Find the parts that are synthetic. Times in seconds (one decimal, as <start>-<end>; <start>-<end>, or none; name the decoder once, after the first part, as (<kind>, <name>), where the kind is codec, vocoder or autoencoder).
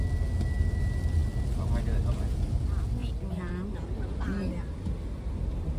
none